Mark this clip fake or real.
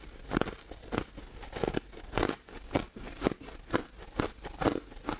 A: real